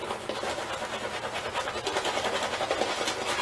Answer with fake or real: real